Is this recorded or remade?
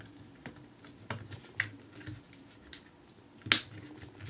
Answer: recorded